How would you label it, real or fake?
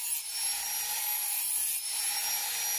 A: real